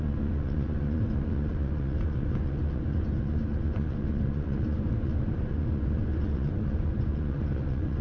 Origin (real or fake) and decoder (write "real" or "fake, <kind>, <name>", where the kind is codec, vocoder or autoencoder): fake, vocoder, Vocos